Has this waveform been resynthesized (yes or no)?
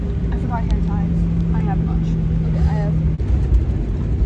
no